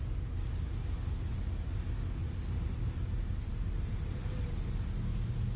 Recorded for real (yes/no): yes